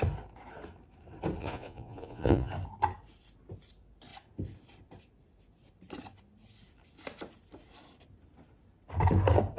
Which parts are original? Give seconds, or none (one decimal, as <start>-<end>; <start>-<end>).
0.0-1.4; 2.5-9.6